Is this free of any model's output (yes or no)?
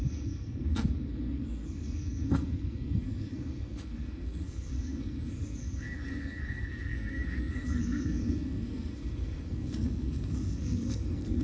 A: no